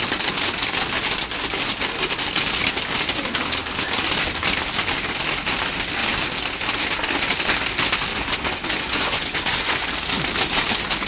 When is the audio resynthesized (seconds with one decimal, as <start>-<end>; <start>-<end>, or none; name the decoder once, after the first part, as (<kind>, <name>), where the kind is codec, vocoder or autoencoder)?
8.1-9.8 (vocoder, Vocos)